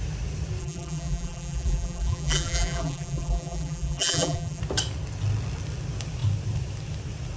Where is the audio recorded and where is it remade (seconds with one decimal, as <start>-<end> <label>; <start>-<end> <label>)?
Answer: 0.0-0.6 recorded; 0.6-4.6 remade; 4.6-7.4 recorded